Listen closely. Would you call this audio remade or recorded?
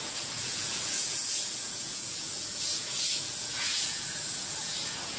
remade